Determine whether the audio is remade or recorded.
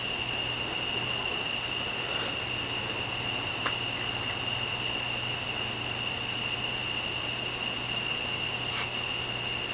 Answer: recorded